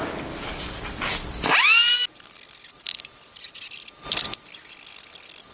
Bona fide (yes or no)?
yes